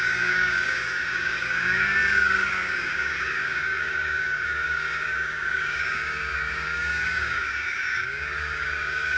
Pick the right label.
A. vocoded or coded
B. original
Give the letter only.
A